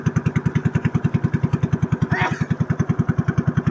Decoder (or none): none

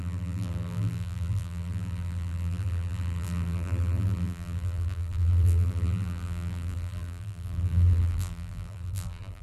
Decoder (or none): vocoder, BigVGAN v2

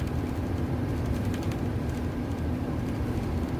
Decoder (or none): vocoder, BigVGAN v2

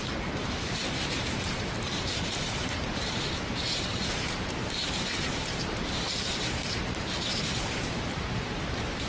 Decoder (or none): vocoder, BigVGAN v2